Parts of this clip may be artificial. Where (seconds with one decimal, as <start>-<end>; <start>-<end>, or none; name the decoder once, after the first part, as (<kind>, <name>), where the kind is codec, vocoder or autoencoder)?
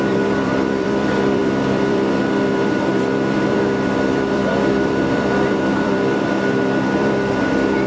0.0-7.9 (vocoder, BigVGAN v2)